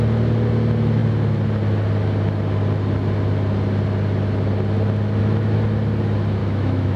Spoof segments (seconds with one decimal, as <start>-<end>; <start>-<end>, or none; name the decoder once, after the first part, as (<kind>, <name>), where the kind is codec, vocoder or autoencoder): 6.4-7.0 (autoencoder, DAC-VAE)